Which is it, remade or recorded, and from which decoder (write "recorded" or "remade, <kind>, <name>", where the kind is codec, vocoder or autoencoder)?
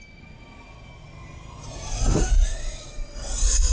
recorded